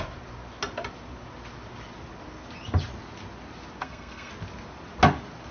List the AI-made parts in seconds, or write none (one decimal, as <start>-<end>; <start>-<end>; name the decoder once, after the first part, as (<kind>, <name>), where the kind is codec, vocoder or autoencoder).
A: 3.8-4.3 (codec, SNAC)